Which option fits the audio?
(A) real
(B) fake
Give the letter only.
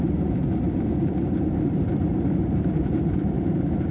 B